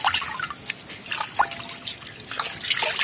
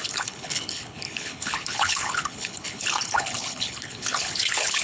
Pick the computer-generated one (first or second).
second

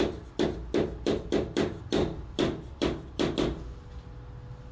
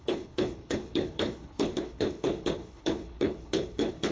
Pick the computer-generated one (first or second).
second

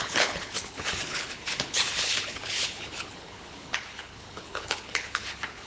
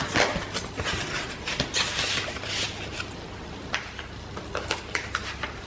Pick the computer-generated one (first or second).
first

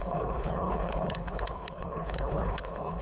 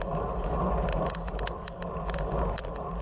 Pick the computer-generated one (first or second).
first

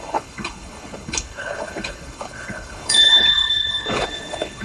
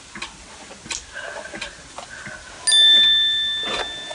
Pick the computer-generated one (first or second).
first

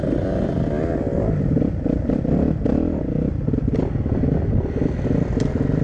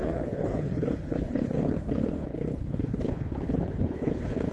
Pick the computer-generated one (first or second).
second